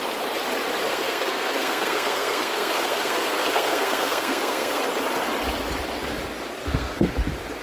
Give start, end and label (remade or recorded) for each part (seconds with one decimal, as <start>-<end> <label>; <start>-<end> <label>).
0.0-0.9 recorded; 0.9-4.8 remade; 4.8-6.6 recorded; 6.6-7.1 remade; 7.1-7.6 recorded